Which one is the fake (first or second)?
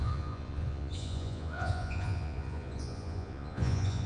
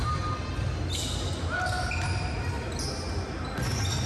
first